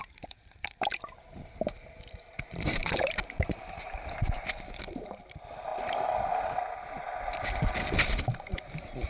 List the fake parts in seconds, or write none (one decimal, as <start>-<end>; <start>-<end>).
0.0-5.7; 8.5-9.1